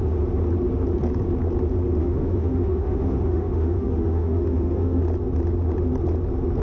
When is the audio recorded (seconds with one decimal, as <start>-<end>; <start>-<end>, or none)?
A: 0.0-2.0; 5.0-6.6